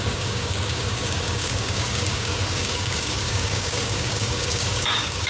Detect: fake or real fake